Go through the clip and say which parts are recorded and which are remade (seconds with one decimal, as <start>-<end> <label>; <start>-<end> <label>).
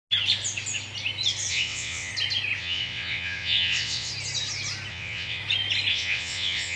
0.0-1.5 recorded; 1.5-2.1 remade; 2.1-2.6 recorded; 2.6-4.1 remade; 4.1-4.9 recorded; 4.9-5.4 remade; 5.4-5.9 recorded; 5.9-6.8 remade